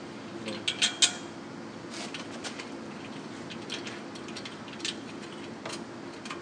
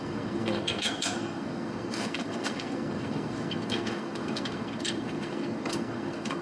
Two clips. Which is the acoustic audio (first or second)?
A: first